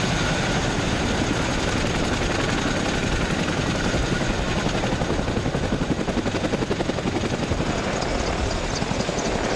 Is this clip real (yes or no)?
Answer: yes